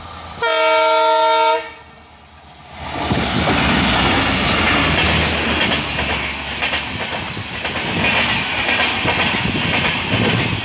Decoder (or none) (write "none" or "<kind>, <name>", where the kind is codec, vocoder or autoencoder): none